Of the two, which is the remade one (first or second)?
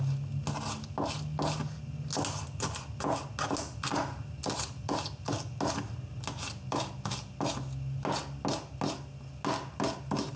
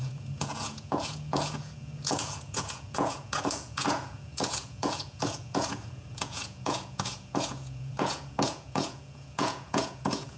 second